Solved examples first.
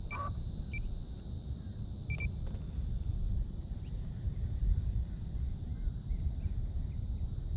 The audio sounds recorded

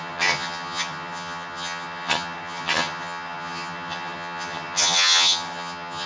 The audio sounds remade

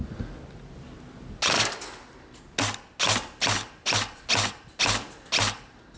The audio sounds recorded